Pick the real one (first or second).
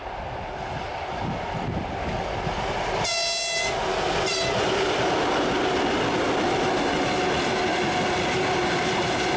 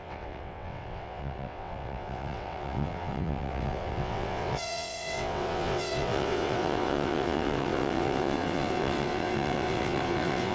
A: first